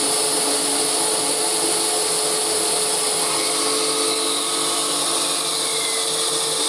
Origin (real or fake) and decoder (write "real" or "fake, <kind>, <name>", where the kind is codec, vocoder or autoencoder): real